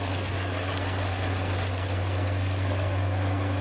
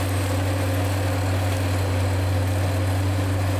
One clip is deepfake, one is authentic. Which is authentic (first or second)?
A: second